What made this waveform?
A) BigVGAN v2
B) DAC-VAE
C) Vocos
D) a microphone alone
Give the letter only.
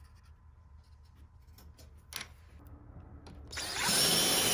D